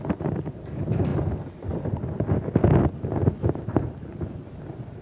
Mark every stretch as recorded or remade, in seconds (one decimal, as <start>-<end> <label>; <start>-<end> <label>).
0.0-1.1 remade; 1.1-3.6 recorded; 3.6-5.0 remade